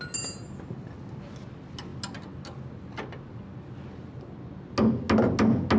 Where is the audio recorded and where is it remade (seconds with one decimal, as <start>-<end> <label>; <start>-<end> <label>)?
0.0-5.8 recorded